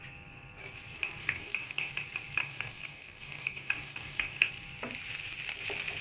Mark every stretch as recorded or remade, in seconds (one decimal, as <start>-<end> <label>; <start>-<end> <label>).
0.0-1.2 recorded; 1.2-1.9 remade; 1.9-2.4 recorded; 2.4-4.5 remade; 4.5-6.0 recorded